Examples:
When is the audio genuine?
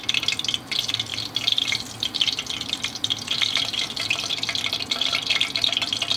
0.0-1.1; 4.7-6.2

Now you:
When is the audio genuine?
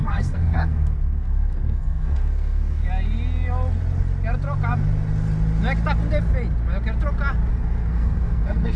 2.8-7.5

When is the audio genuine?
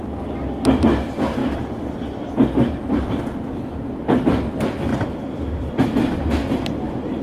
0.0-4.9; 5.6-7.2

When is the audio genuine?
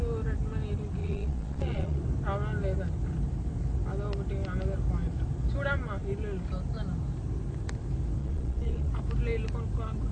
0.0-1.0; 2.0-8.2; 8.9-10.1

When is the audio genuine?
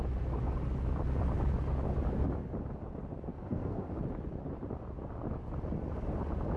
0.0-3.3; 3.9-6.6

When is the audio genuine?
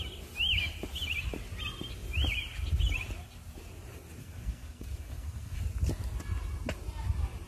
0.0-4.2; 5.6-7.5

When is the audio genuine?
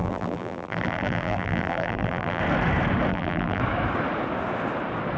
2.4-3.1; 3.6-5.2